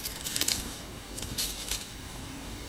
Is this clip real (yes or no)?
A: no